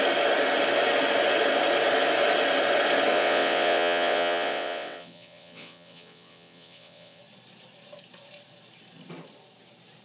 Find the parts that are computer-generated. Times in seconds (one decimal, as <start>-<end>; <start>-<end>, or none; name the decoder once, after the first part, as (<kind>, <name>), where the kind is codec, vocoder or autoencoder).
3.1-7.2 (vocoder, WaveNeXt)